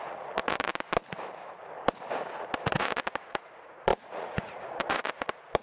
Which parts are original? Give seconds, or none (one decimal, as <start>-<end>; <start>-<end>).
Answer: 0.7-2.4